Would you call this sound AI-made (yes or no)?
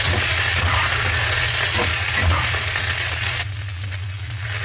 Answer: yes